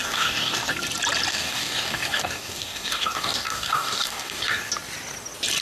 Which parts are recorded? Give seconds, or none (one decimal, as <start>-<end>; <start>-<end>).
0.7-1.3; 4.7-5.6

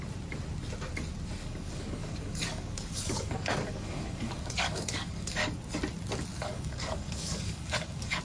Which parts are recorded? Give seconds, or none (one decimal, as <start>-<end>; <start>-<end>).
0.0-1.4; 5.5-6.3

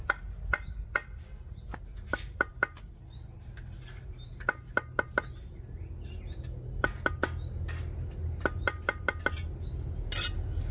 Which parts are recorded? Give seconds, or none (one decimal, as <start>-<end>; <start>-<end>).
0.0-10.7

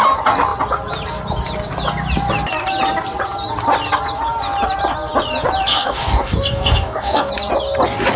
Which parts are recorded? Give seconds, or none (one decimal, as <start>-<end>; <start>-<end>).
0.0-5.7; 7.3-8.2

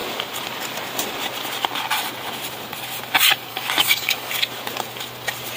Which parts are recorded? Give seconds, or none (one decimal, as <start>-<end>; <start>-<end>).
0.0-3.5; 4.3-5.6

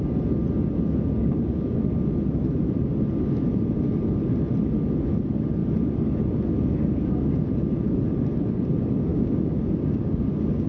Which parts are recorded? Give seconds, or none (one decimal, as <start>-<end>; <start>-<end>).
0.0-1.2; 1.8-9.1